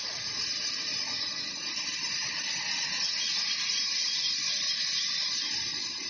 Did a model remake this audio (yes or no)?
no